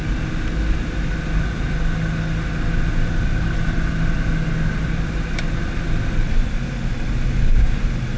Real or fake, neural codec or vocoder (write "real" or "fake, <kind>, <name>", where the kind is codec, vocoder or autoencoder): real